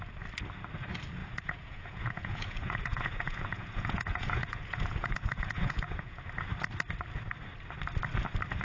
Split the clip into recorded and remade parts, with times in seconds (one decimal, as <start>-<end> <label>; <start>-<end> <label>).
0.0-1.2 recorded; 1.2-6.3 remade; 6.3-8.6 recorded